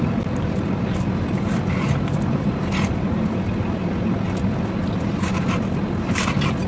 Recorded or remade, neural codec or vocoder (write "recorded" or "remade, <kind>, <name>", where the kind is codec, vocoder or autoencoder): recorded